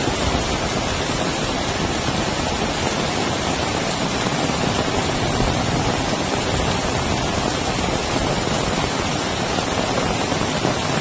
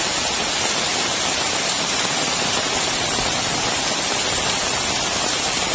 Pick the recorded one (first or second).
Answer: first